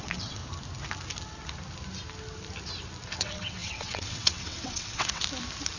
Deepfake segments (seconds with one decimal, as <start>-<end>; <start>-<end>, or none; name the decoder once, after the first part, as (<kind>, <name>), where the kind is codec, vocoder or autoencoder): 0.0-0.4 (vocoder, WaveNeXt); 3.2-5.2